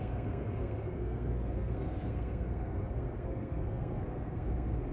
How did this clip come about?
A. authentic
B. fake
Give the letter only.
B